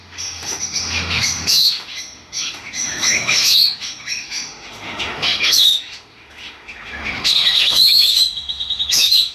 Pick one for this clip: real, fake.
fake